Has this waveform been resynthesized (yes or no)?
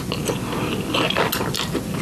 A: no